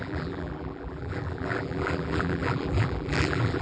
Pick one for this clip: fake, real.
fake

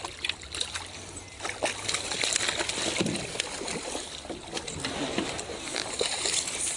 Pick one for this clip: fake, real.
real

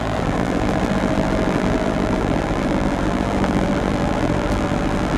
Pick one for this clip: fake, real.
fake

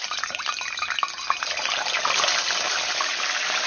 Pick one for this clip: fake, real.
real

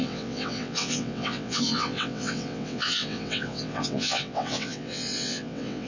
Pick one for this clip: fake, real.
fake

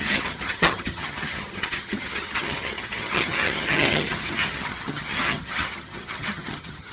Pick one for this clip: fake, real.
fake